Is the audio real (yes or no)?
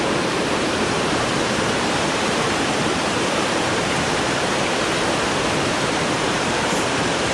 no